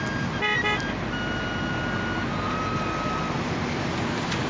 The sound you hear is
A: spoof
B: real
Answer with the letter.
B